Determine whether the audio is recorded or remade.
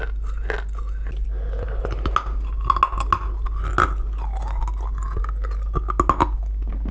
recorded